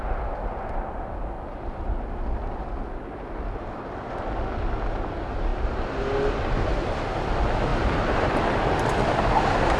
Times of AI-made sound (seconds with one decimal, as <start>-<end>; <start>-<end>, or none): 6.7-7.3; 7.7-9.0